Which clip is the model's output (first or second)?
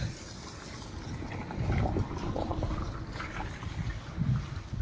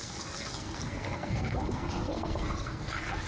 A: second